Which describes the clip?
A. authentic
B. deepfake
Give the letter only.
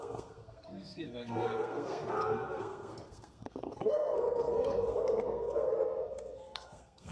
B